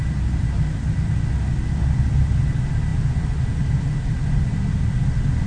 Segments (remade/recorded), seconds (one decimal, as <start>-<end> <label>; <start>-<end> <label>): 0.0-5.5 recorded